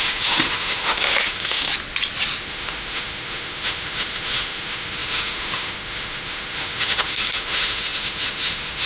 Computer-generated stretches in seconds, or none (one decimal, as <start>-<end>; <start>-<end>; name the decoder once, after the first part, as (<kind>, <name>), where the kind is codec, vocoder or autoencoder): 0.0-1.7 (autoencoder, DAC-VAE); 2.4-8.9